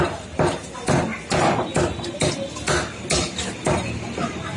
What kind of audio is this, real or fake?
real